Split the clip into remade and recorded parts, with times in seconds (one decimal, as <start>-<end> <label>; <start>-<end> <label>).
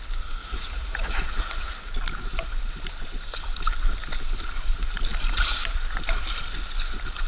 0.0-0.4 recorded; 0.4-1.9 remade; 1.9-7.3 recorded